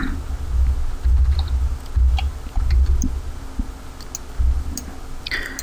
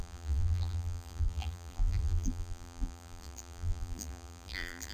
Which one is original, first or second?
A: first